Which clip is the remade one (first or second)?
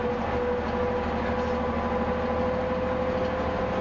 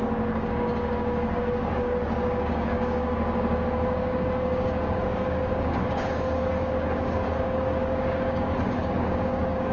second